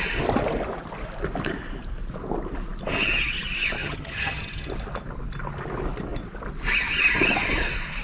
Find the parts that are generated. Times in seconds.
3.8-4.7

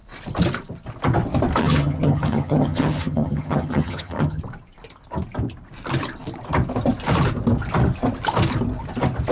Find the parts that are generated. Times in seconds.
1.6-4.4

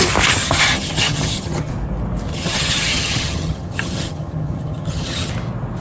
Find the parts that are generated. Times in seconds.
0.4-1.7; 2.3-5.3

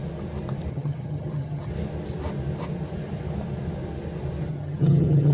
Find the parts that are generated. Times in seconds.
0.7-1.7; 4.5-5.3

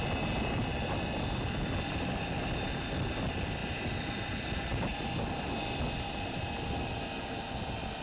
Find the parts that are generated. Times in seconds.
none

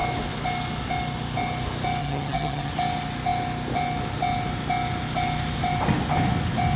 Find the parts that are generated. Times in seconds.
2.0-2.7

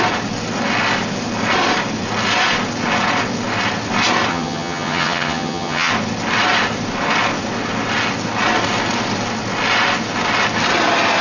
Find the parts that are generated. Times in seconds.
4.3-5.9

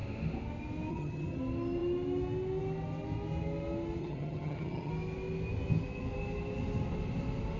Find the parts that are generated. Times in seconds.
0.9-1.4; 4.0-4.9